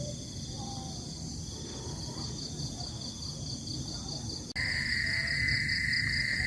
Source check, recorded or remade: recorded